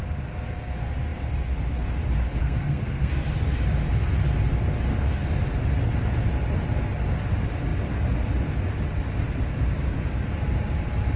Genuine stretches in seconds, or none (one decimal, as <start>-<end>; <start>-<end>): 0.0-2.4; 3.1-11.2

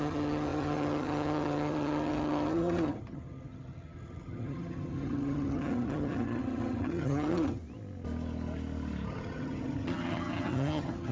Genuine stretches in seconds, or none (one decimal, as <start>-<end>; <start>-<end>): 7.6-9.1

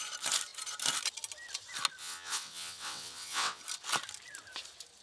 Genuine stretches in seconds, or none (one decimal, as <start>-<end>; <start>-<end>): 0.0-2.0; 3.6-5.0